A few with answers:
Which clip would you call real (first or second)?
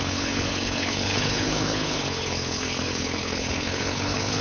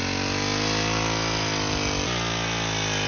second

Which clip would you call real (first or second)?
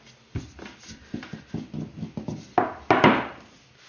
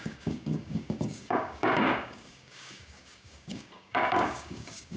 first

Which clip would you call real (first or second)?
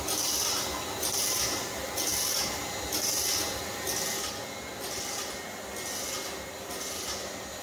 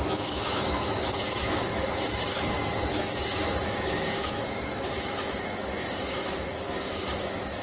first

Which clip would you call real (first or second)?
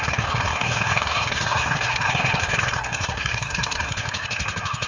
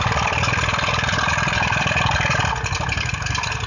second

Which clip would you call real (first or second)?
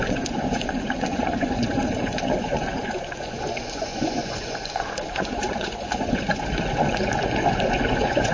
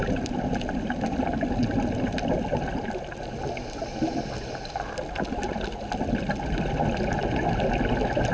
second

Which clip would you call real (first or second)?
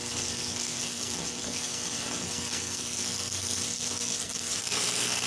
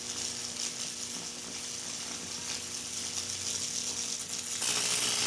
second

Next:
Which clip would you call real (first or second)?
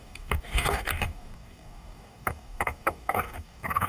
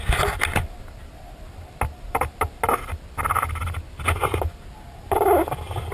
second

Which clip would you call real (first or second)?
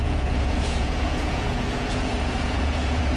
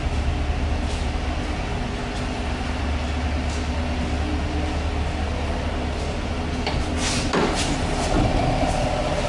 second